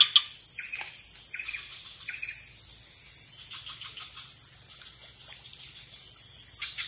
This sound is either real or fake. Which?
real